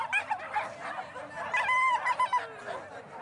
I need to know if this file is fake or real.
real